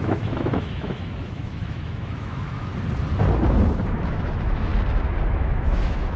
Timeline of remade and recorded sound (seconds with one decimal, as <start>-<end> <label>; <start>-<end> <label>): 0.0-2.7 remade; 2.7-3.9 recorded; 3.9-4.7 remade; 4.7-5.4 recorded; 5.4-6.2 remade